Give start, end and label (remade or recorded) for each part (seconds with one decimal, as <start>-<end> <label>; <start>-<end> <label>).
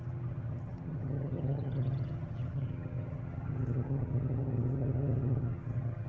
0.0-6.1 remade